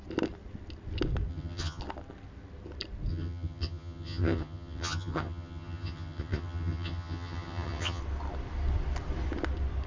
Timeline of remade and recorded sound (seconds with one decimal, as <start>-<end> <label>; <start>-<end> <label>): 0.0-1.3 recorded; 1.3-1.8 remade; 1.8-3.1 recorded; 3.1-8.0 remade; 8.0-9.9 recorded